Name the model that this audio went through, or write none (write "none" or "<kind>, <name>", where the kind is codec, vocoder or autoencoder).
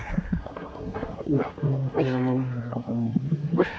codec, SNAC